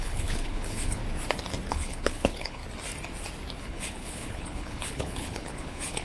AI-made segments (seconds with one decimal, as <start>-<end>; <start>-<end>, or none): 0.0-1.0; 1.7-2.6; 3.6-6.0